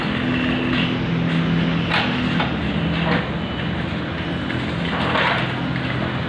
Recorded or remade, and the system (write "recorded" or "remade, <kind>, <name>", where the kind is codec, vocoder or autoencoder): recorded